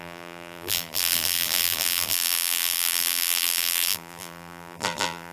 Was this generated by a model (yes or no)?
yes